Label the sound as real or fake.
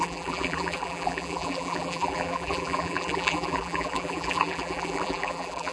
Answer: fake